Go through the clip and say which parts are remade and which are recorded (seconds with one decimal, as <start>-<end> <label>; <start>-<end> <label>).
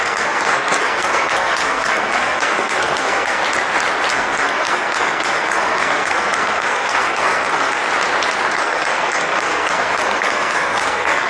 0.0-3.4 remade; 3.4-4.1 recorded; 4.1-7.8 remade; 7.8-8.5 recorded; 8.5-11.3 remade